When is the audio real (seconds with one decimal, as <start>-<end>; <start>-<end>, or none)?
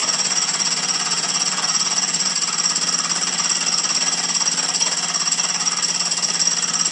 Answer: 2.3-6.9